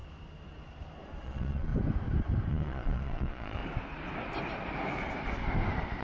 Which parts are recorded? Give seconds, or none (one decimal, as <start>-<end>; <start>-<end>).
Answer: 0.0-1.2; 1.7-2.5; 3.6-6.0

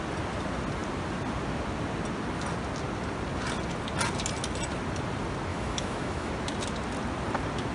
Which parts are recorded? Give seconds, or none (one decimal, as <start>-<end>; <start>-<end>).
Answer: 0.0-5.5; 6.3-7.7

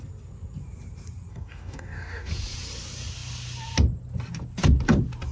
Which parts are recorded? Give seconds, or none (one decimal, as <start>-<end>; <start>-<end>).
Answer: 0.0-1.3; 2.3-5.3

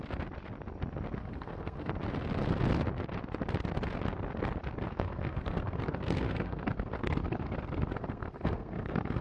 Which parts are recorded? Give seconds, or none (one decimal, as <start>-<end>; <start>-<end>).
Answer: 0.0-1.2; 1.9-4.9